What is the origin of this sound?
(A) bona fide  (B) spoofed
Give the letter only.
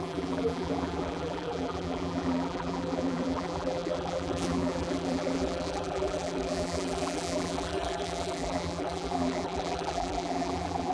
B